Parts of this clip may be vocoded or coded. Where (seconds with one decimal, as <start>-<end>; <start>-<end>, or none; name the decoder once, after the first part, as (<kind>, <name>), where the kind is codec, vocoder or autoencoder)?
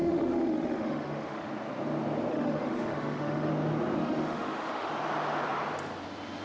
0.0-1.5 (autoencoder, DAC-VAE); 2.3-3.5; 4.0-4.9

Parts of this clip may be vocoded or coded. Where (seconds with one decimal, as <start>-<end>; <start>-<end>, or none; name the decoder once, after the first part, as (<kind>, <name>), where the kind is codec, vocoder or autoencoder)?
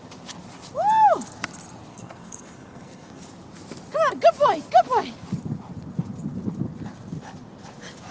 1.9-3.2 (codec, SNAC)